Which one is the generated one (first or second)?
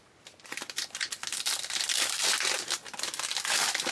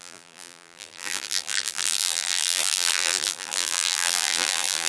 second